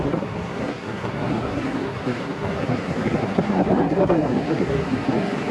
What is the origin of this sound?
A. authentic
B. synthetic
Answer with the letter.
B